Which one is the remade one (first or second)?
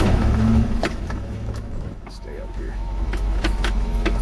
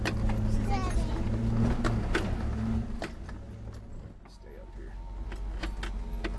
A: first